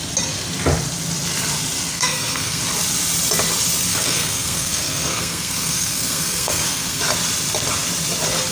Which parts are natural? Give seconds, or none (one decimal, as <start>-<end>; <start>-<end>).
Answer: 0.0-1.9; 2.6-3.9; 7.0-8.5

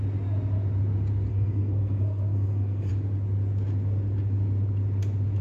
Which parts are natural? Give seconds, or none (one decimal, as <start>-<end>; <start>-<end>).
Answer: 0.0-1.3; 2.9-5.4

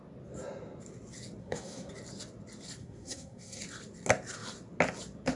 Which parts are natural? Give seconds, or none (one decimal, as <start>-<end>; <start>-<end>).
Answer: 0.0-1.4; 1.9-2.8; 3.6-5.4

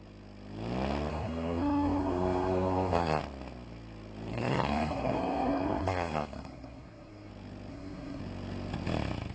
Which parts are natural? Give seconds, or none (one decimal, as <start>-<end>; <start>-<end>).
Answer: 0.0-1.1; 3.2-4.3; 7.3-7.7; 8.2-9.3

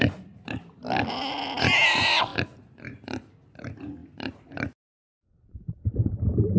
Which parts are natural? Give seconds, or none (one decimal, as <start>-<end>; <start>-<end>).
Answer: 0.0-6.6

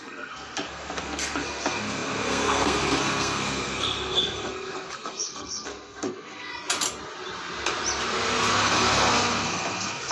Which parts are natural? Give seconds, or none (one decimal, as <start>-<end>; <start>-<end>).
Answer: 6.5-8.5